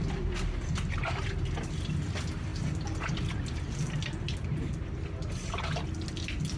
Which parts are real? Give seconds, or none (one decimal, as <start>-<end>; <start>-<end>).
0.0-6.6